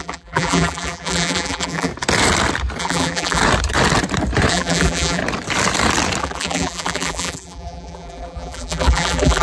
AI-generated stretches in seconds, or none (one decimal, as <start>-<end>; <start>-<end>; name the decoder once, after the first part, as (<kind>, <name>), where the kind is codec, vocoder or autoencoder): 0.0-1.9 (vocoder, BigVGAN v2); 2.8-3.4; 4.5-5.2; 6.2-9.4